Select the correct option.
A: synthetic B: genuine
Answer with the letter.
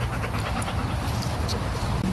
B